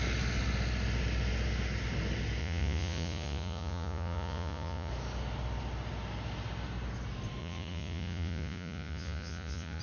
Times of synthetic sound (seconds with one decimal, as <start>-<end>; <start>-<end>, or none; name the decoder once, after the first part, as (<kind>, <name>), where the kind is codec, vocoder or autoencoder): 2.4-4.9 (vocoder, Vocos); 7.4-9.8